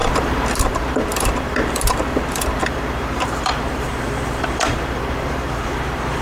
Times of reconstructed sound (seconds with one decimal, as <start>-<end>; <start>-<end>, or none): 0.0-6.2